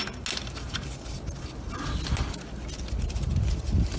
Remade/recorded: recorded